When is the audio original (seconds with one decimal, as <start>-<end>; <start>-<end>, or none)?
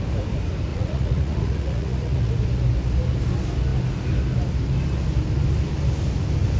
0.0-0.7; 2.3-6.6